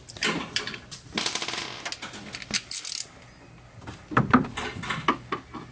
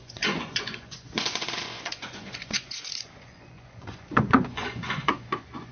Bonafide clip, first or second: first